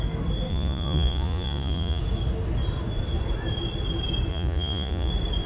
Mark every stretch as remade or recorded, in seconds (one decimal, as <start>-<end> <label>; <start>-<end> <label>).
0.0-0.5 recorded; 0.5-2.0 remade; 2.0-4.3 recorded; 4.3-5.1 remade; 5.1-5.5 recorded